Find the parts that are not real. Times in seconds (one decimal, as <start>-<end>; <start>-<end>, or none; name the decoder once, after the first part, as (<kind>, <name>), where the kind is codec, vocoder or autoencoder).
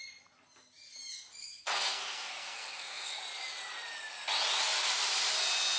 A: 1.4-3.2 (codec, SNAC)